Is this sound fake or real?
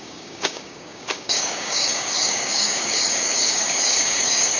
fake